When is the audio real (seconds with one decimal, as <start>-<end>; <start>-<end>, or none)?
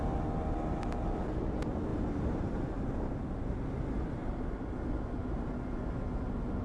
0.0-1.9; 2.8-6.6